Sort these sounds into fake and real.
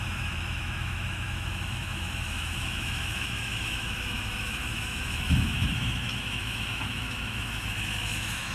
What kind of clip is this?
fake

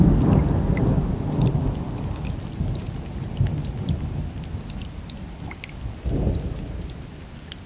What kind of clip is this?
real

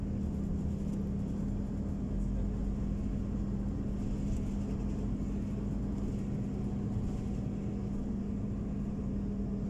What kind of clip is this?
real